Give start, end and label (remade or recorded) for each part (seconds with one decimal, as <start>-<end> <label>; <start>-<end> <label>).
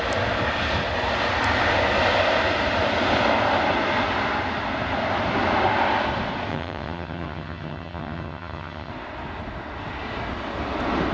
0.0-6.5 recorded; 6.5-8.9 remade; 8.9-11.1 recorded